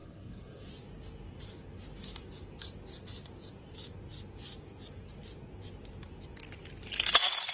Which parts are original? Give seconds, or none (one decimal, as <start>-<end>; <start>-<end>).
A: 0.7-7.5